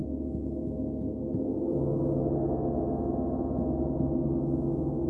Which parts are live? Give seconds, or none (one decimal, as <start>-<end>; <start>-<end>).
0.0-5.1